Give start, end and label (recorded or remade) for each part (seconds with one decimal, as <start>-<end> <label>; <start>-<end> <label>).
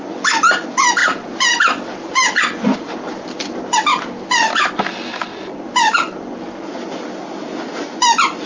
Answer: 0.0-8.5 recorded